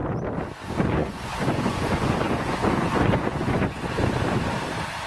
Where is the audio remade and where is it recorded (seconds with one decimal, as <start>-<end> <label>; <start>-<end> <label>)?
0.0-1.0 recorded; 1.0-4.1 remade; 4.1-5.1 recorded

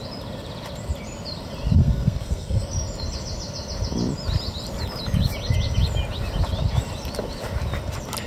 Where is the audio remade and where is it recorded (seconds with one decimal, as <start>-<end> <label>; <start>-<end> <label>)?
0.0-1.8 recorded; 1.8-2.6 remade; 2.6-8.3 recorded

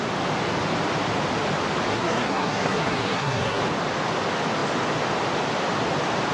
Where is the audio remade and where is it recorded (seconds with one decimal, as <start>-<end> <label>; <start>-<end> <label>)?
0.0-1.9 recorded; 1.9-3.6 remade; 3.6-6.3 recorded

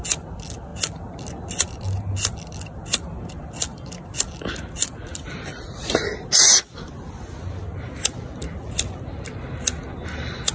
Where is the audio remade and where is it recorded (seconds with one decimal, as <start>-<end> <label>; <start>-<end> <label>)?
0.0-10.5 recorded